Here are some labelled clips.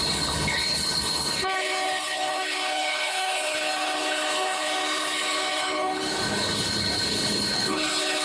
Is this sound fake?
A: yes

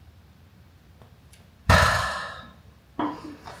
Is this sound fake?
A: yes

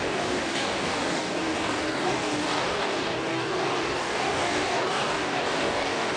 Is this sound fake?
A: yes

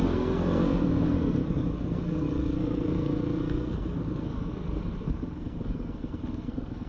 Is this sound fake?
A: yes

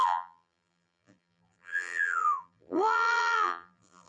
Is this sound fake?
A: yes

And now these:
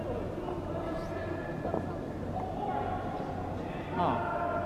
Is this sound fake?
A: no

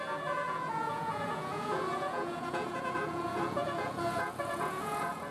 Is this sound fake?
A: yes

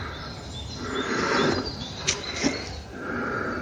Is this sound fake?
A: no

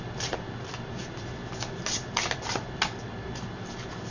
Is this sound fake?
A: no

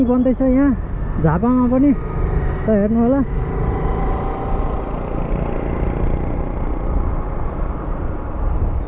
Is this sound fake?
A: no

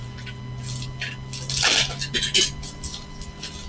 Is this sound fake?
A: no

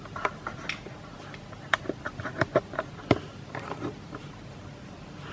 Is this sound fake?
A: no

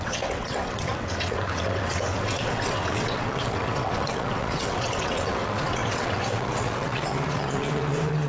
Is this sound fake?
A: yes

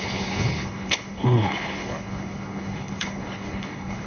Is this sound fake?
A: yes